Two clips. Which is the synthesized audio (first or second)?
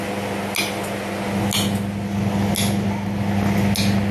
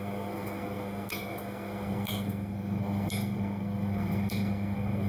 second